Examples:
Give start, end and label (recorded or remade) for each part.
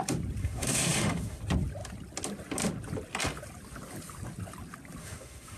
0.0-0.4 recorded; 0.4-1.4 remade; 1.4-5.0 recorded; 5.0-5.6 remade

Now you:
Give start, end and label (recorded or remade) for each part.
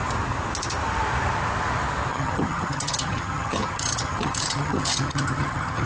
0.0-2.1 recorded; 2.1-5.9 remade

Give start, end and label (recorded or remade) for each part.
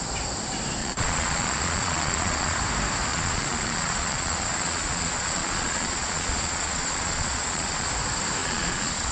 0.0-0.8 recorded; 0.8-2.6 remade; 2.6-3.1 recorded; 3.1-7.9 remade; 7.9-8.4 recorded; 8.4-9.1 remade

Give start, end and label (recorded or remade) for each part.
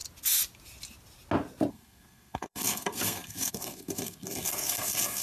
0.0-1.7 recorded; 1.7-5.2 remade